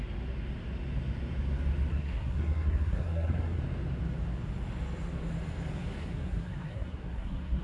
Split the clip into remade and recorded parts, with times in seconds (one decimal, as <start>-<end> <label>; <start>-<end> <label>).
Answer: 0.0-1.9 recorded; 1.9-3.6 remade; 3.6-5.7 recorded; 5.7-7.6 remade